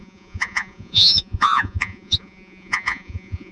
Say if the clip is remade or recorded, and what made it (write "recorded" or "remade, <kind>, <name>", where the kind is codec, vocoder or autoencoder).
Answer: remade, vocoder, Vocos